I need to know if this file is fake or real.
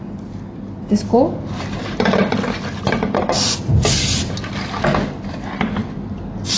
real